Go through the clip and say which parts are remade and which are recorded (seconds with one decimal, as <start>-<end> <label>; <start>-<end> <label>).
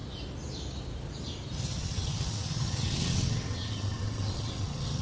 0.0-1.8 recorded; 1.8-5.0 remade